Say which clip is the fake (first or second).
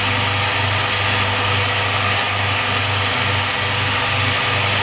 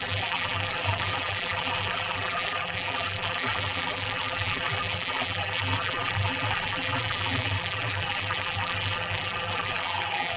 second